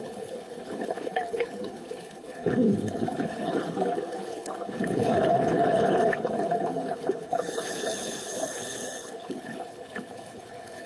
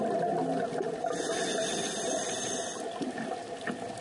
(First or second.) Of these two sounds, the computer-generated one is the first